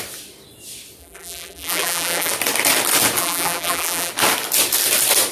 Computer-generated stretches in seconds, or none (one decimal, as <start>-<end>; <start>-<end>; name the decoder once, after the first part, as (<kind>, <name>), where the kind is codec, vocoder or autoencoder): 1.0-2.3 (vocoder, BigVGAN v2); 3.2-4.1